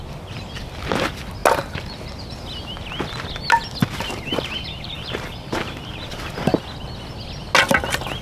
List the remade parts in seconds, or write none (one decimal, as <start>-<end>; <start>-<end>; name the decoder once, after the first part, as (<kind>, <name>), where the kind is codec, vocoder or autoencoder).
3.8-6.6 (vocoder, BigVGAN v2)